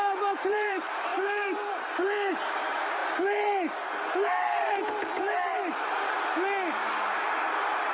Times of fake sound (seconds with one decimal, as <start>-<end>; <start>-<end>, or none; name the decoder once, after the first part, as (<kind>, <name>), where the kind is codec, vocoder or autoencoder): 0.0-3.0 (vocoder, BigVGAN v2)